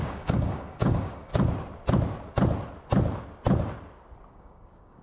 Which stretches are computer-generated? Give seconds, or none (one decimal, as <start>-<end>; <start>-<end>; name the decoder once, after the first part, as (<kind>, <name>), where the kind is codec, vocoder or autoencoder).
0.0-1.3 (codec, DAC); 4.3-5.0